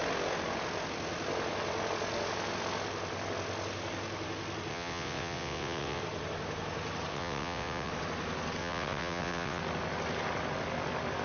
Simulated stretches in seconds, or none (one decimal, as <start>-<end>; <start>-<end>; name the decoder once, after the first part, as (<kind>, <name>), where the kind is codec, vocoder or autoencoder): 4.7-6.0 (vocoder, WaveNeXt); 7.1-7.9; 8.6-9.6